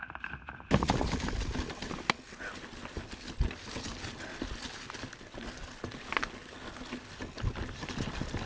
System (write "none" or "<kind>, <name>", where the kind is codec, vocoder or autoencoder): none